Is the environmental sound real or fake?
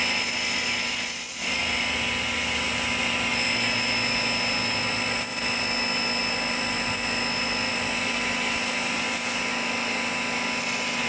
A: real